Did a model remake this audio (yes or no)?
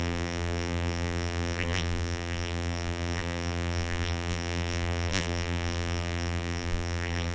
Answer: yes